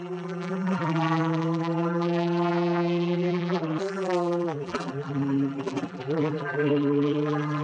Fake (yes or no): yes